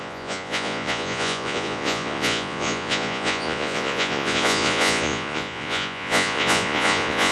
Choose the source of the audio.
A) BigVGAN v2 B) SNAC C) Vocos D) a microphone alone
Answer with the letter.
C